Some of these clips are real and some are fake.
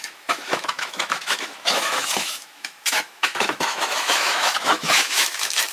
fake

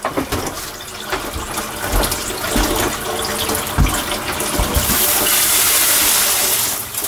real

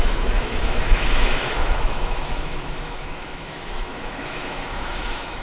fake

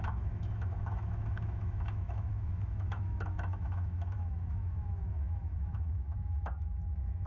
fake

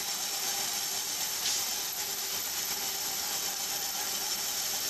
real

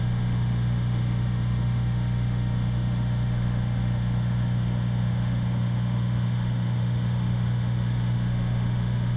fake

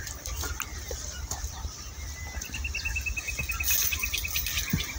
real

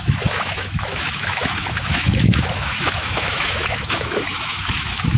fake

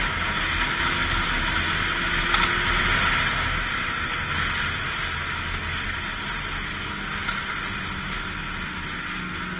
real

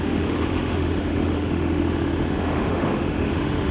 fake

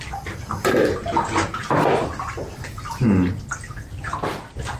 real